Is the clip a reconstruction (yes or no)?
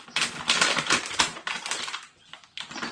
no